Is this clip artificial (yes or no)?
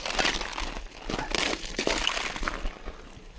no